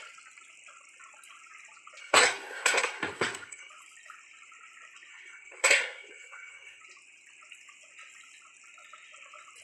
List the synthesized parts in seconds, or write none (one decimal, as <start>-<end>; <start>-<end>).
2.0-3.7; 5.1-6.8